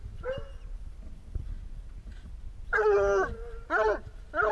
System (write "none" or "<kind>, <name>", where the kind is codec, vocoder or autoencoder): none